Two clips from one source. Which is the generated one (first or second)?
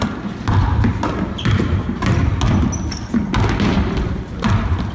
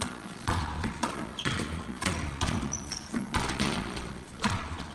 second